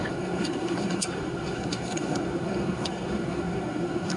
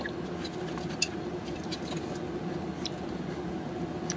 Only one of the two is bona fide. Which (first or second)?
second